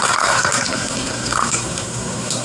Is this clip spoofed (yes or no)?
yes